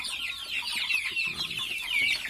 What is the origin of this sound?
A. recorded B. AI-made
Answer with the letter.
A